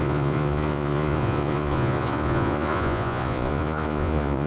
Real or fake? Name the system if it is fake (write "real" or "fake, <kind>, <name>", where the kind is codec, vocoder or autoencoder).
fake, vocoder, Vocos